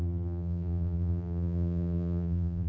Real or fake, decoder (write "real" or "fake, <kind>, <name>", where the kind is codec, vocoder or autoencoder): fake, vocoder, BigVGAN v2